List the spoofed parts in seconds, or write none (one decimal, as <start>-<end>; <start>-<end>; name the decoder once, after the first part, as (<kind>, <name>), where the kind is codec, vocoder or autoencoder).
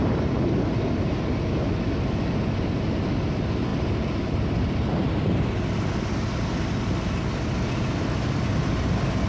3.7-5.7 (vocoder, BigVGAN v2)